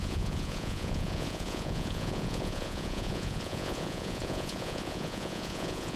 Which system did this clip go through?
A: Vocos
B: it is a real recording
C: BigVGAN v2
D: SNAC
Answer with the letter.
A